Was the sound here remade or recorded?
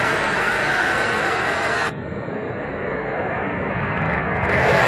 remade